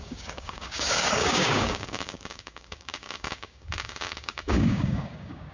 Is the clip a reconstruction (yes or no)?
yes